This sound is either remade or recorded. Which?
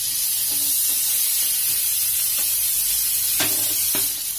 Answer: recorded